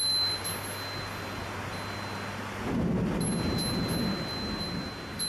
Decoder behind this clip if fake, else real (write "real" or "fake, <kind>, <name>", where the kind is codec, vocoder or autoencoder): real